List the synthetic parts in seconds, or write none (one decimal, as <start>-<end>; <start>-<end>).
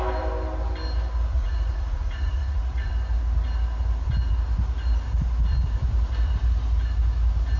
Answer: 1.3-2.9